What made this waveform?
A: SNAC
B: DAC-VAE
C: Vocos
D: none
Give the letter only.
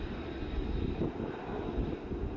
D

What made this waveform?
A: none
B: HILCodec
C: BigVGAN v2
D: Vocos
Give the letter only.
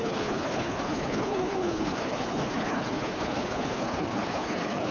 B